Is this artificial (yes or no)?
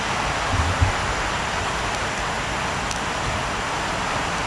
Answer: no